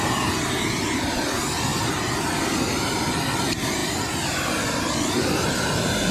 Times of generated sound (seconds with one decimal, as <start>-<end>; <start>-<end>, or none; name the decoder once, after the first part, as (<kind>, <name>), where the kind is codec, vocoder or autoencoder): none